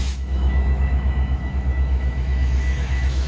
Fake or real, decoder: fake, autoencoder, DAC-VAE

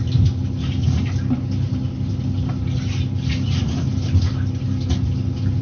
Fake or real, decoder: real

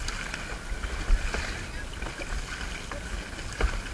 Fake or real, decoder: real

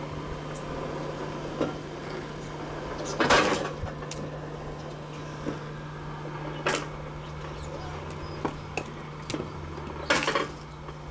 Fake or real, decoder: real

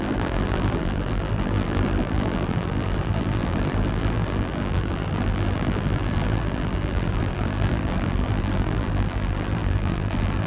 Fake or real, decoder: fake, vocoder, BigVGAN v2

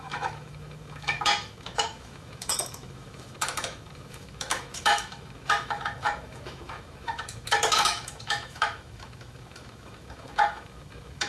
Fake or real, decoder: fake, autoencoder, DAC-VAE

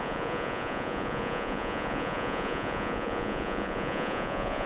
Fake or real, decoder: fake, vocoder, Vocos